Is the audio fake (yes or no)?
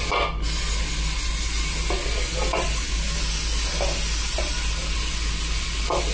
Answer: no